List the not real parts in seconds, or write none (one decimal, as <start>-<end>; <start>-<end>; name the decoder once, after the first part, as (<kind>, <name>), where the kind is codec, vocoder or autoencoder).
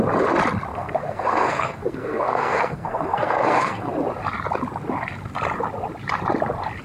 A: 0.7-3.9 (codec, SNAC)